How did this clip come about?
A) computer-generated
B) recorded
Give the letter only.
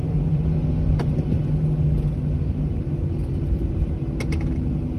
B